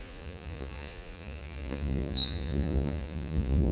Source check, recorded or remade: remade